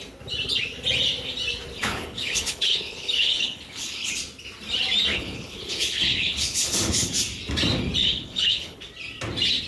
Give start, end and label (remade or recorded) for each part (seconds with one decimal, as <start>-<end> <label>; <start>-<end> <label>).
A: 0.0-1.8 recorded; 1.8-4.1 remade; 4.1-5.1 recorded; 5.1-7.1 remade; 7.1-8.0 recorded; 8.0-8.8 remade; 8.8-9.7 recorded